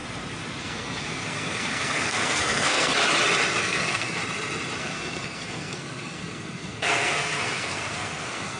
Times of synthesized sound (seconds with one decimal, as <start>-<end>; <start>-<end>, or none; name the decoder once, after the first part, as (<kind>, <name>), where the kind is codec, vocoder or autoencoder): 0.6-2.9 (codec, SNAC); 3.6-4.2; 4.8-8.6